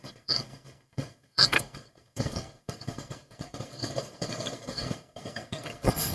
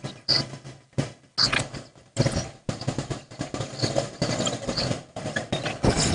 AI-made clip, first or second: first